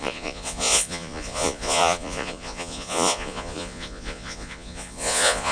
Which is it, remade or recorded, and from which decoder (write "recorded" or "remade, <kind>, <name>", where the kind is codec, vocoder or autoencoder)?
remade, vocoder, Vocos